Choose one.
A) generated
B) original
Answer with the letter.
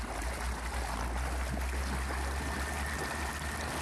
B